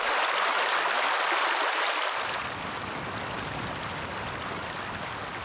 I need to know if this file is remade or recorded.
recorded